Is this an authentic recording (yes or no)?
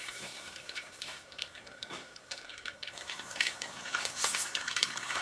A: no